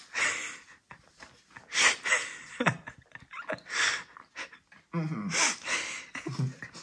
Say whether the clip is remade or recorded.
recorded